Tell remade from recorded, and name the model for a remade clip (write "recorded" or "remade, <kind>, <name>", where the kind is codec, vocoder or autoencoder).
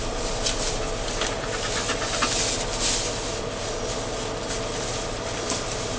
recorded